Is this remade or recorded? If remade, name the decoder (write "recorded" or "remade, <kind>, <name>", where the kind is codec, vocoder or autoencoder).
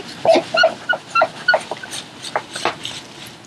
recorded